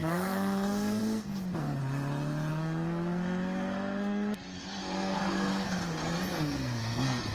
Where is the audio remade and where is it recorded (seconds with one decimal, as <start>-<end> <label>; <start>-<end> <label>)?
0.0-1.8 remade; 1.8-2.5 recorded; 2.5-5.8 remade; 5.8-6.3 recorded; 6.3-7.3 remade